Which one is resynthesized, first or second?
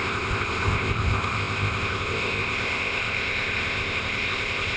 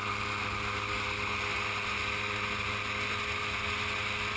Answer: first